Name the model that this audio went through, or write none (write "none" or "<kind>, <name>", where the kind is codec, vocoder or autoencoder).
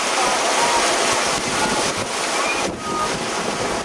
none